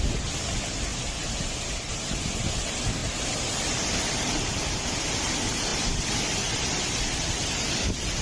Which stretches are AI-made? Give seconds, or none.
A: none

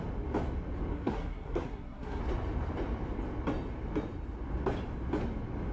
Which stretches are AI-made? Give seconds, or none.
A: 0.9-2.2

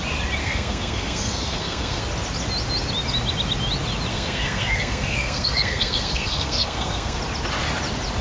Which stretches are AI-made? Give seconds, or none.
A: 0.4-2.0; 4.1-7.2